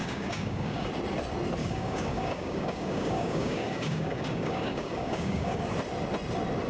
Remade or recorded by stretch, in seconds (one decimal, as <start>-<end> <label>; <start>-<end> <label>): 0.0-0.9 remade; 0.9-1.6 recorded; 1.6-5.6 remade; 5.6-6.7 recorded